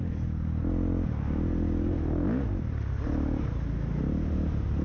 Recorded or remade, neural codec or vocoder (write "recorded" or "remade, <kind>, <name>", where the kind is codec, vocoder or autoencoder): recorded